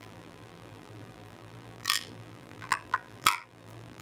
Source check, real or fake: fake